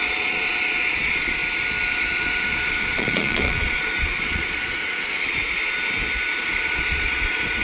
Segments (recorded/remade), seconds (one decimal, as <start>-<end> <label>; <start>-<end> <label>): 0.0-1.4 remade; 1.4-1.9 recorded; 1.9-5.4 remade; 5.4-6.4 recorded; 6.4-7.6 remade